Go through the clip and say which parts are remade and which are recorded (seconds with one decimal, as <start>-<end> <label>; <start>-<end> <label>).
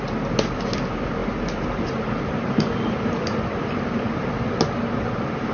0.0-5.5 recorded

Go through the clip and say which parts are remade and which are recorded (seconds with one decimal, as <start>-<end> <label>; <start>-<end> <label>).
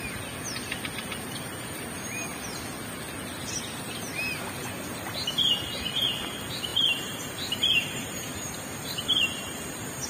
0.0-6.7 recorded; 6.7-10.1 remade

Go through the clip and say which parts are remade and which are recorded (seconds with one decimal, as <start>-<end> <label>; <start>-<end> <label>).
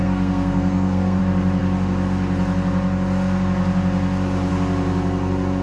0.0-1.2 remade; 1.2-5.6 recorded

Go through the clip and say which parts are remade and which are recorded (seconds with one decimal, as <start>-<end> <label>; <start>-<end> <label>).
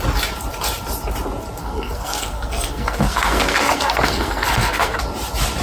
0.0-1.6 recorded; 1.6-5.0 remade; 5.0-5.6 recorded